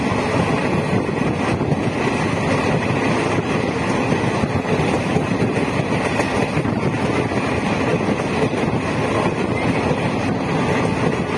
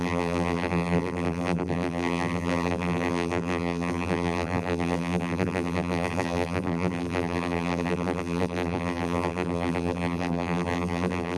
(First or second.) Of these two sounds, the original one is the first